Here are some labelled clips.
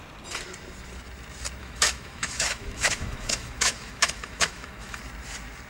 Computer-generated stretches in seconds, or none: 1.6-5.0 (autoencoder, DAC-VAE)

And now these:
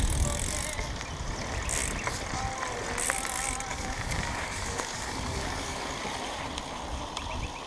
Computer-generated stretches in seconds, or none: 3.7-6.0 (codec, DAC)

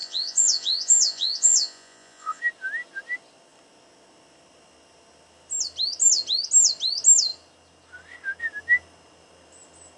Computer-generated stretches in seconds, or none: 0.0-2.4 (vocoder, Vocos)

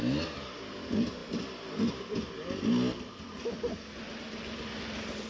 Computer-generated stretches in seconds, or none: none